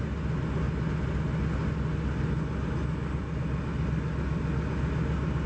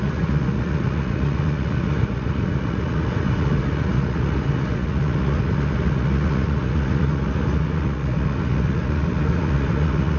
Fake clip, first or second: second